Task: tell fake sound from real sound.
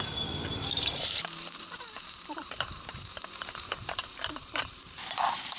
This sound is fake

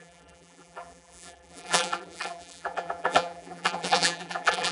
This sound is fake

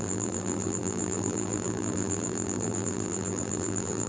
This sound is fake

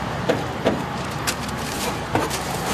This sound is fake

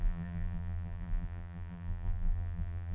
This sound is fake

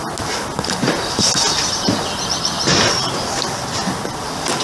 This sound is real